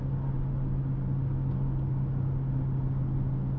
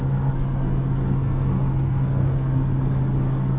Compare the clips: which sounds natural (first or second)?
first